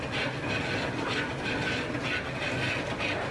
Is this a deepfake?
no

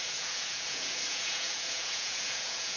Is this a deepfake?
yes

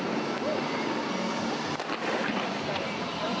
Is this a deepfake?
no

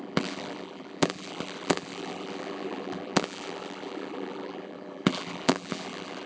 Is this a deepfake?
yes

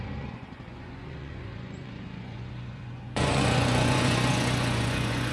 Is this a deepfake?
yes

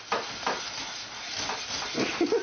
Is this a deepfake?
no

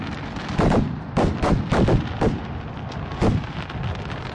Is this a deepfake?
no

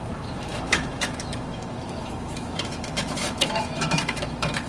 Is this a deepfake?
yes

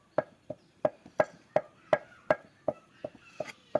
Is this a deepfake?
yes